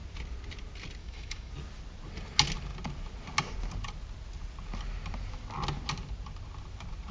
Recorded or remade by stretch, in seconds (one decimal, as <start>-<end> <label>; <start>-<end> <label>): 0.0-1.0 recorded; 1.0-1.5 remade; 1.5-7.1 recorded